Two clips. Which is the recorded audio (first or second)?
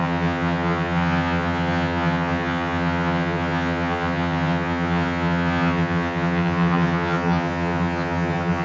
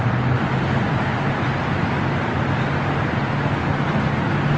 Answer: second